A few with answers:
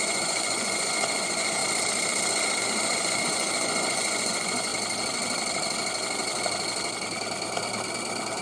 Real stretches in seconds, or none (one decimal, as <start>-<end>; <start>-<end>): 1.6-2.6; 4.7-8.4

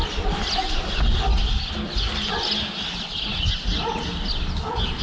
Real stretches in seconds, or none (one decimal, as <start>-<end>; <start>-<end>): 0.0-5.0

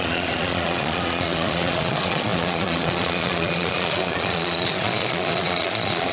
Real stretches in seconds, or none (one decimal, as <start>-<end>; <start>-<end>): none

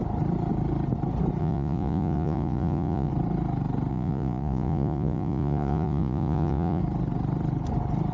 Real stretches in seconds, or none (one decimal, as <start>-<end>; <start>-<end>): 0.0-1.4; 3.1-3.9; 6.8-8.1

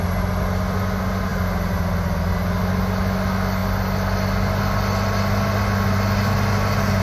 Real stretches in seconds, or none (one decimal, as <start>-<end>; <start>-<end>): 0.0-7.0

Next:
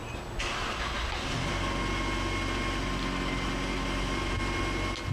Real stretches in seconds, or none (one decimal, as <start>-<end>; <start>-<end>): 0.0-5.1